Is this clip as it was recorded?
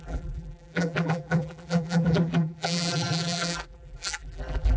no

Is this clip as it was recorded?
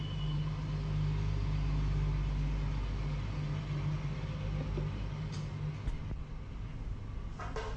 yes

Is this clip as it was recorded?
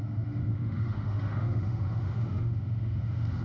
no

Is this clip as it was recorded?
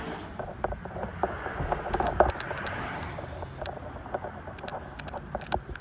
yes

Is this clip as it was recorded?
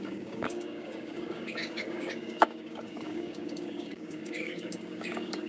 no